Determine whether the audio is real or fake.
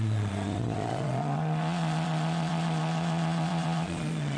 fake